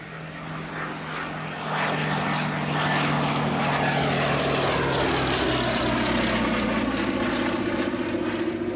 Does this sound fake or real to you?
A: real